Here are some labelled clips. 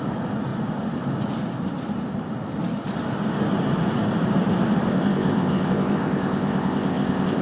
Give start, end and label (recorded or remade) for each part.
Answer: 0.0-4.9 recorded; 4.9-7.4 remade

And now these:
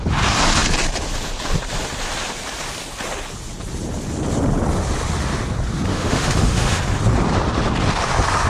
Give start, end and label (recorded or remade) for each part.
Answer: 0.0-5.9 recorded; 5.9-6.8 remade; 6.8-8.5 recorded

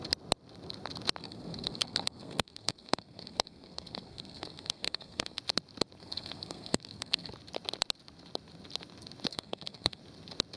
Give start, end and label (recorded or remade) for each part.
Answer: 0.0-1.2 recorded; 1.2-5.4 remade; 5.4-6.0 recorded; 6.0-7.3 remade; 7.3-9.3 recorded; 9.3-10.0 remade; 10.0-10.6 recorded

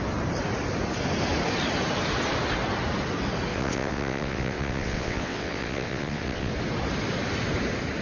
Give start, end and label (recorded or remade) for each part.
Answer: 0.0-3.5 recorded; 3.5-6.5 remade; 6.5-8.0 recorded